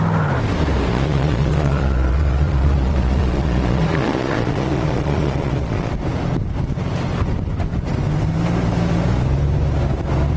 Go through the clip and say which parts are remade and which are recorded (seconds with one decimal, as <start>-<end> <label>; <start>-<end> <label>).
0.0-0.9 recorded; 0.9-5.9 remade; 5.9-10.4 recorded